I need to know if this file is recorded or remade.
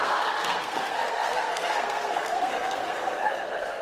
remade